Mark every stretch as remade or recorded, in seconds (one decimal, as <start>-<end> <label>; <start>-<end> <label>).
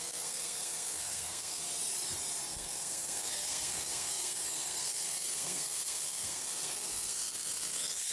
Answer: 0.0-1.6 remade; 1.6-2.5 recorded; 2.5-8.1 remade